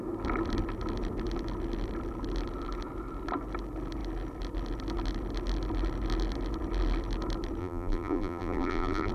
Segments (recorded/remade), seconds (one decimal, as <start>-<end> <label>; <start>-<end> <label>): 0.0-7.6 recorded; 7.6-9.1 remade